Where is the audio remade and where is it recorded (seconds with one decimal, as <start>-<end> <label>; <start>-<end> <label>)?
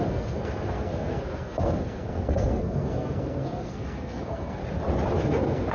0.0-4.6 remade; 4.6-5.2 recorded; 5.2-5.7 remade